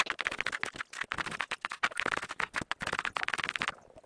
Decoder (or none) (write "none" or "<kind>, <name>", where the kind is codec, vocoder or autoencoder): none